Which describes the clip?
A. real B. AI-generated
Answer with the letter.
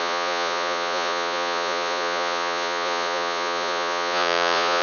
B